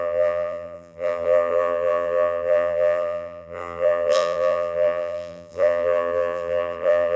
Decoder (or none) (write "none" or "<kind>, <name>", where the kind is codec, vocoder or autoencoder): vocoder, BigVGAN v2